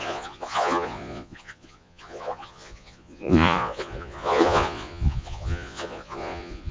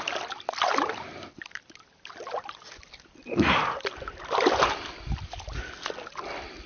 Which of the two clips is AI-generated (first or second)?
first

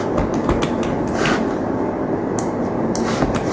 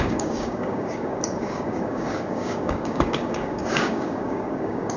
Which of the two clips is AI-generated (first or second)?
second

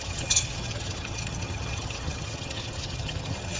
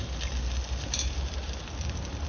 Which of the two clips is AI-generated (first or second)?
first